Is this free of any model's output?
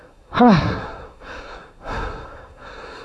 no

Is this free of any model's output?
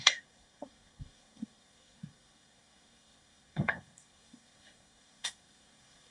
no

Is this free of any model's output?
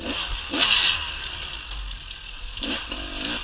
yes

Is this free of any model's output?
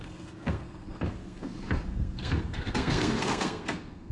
no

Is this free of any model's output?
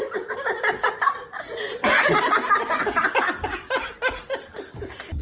yes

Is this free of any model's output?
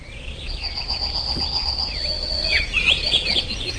no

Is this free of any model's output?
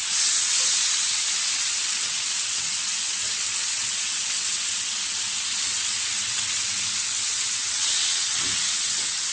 no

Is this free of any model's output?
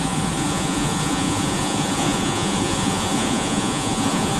no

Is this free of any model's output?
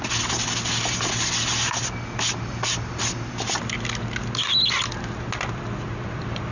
yes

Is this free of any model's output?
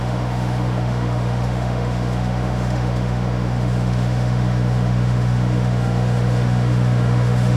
no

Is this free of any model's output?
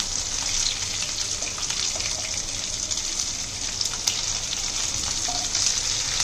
yes